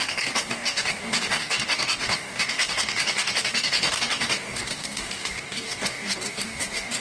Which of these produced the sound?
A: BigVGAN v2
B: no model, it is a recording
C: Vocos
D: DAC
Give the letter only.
D